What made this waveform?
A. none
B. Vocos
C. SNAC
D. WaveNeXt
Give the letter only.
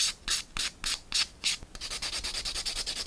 A